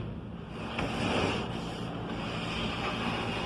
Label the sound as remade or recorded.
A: recorded